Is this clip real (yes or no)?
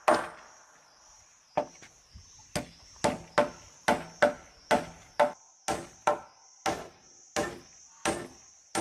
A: yes